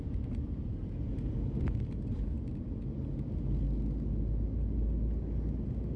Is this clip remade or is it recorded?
recorded